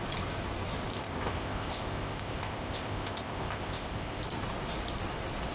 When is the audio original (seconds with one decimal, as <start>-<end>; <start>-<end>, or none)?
0.0-0.9; 4.2-5.5